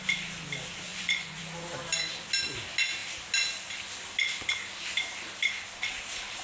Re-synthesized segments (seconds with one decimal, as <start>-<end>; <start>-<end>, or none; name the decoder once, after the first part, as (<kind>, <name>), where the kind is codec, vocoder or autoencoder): 0.9-1.4 (vocoder, Vocos)